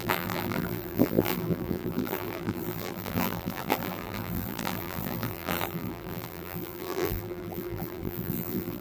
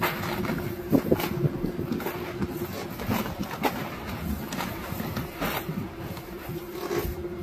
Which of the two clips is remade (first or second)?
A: first